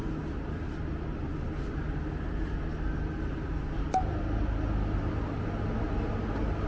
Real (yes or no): yes